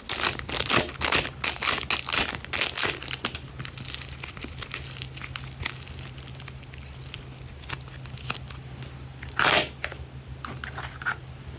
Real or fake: real